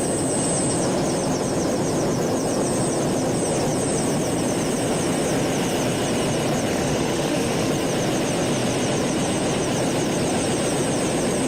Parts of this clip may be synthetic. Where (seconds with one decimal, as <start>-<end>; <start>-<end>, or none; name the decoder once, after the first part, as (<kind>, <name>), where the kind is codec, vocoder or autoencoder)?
6.7-7.7 (autoencoder, DAC-VAE)